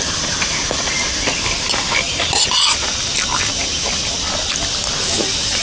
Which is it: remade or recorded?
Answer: recorded